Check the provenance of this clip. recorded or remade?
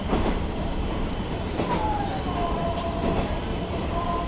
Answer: remade